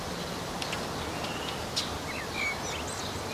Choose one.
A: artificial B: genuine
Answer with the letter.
B